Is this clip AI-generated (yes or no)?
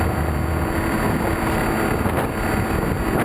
no